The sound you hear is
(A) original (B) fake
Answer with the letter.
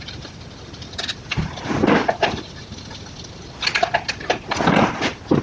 A